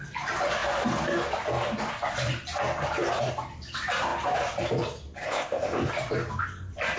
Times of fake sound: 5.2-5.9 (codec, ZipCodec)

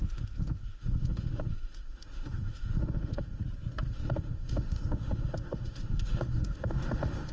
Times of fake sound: 0.0-3.4 (autoencoder, DAC-VAE); 3.9-7.3

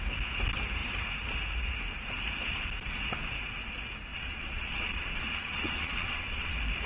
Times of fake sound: 4.1-6.5 (vocoder, Vocos)

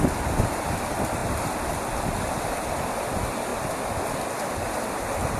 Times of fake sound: none

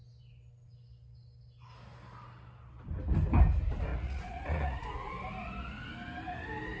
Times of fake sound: 3.9-5.1 (vocoder, Vocos)

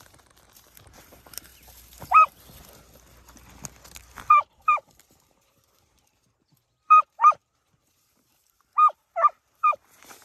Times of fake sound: 0.0-1.5 (vocoder, BigVGAN v2); 5.0-10.2

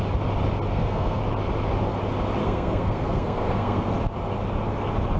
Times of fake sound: 0.7-1.2 (codec, SNAC); 2.4-3.9

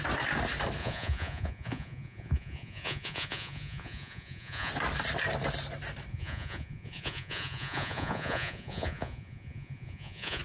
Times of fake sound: 0.8-4.7 (vocoder, Vocos); 6.1-10.4